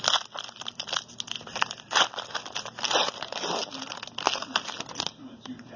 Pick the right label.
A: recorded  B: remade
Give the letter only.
A